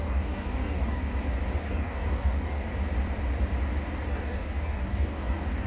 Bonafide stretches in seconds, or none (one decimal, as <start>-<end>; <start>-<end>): 1.1-1.6; 2.7-4.1